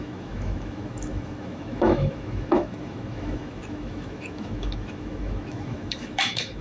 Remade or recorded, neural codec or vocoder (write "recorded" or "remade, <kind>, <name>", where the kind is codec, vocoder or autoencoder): remade, autoencoder, DAC-VAE